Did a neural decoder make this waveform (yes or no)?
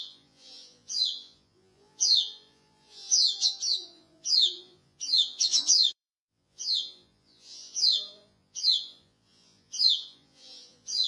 yes